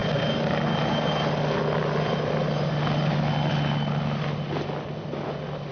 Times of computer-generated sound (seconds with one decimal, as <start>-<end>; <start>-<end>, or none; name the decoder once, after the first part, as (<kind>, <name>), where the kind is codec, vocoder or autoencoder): none

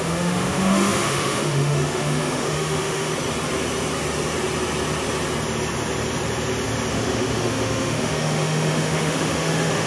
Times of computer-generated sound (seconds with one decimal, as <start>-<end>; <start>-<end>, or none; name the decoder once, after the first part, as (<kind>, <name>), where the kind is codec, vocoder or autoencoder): 0.0-3.1 (autoencoder, DAC-VAE); 6.9-9.9

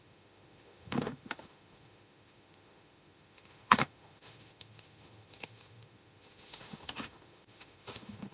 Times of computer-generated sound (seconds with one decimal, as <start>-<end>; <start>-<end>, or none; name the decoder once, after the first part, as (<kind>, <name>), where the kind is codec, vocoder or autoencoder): 0.0-8.3 (autoencoder, DAC-VAE)

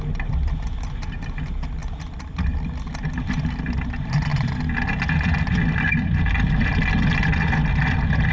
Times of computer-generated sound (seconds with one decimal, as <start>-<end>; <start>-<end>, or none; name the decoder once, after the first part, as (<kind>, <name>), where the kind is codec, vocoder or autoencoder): none

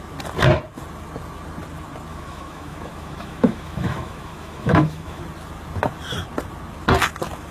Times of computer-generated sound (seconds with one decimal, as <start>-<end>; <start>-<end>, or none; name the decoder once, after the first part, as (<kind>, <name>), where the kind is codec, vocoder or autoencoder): 2.1-5.2 (autoencoder, DAC-VAE)

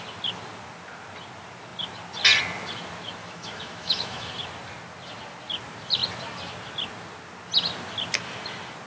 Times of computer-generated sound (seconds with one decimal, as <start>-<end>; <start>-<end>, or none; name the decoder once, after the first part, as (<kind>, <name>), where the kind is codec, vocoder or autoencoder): 3.2-4.3 (autoencoder, DAC-VAE)